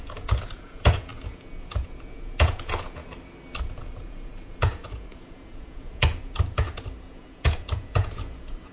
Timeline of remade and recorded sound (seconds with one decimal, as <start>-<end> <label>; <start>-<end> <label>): 0.0-3.0 remade; 3.0-3.6 recorded; 3.6-8.7 remade